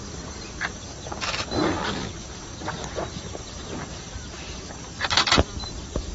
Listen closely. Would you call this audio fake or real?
real